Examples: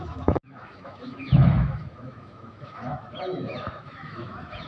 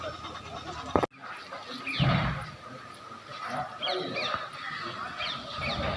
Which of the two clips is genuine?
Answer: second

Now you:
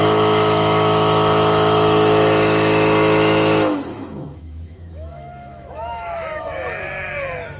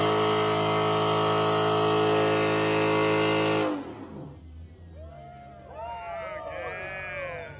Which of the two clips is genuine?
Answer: second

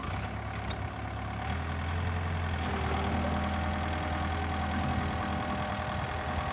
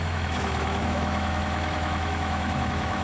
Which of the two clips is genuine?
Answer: first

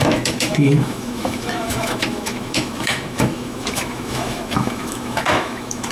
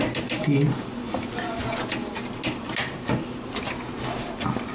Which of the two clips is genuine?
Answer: second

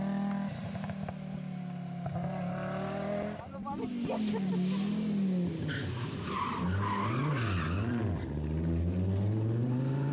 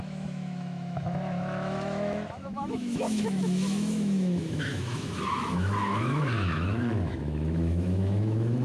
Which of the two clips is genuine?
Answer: first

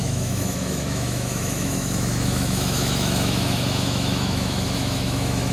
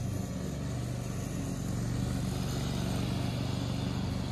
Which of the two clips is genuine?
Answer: second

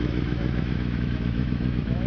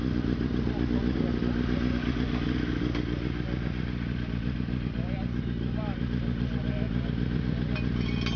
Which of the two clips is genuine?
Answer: second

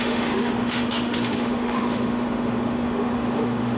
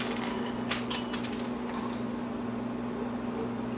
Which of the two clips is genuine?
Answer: second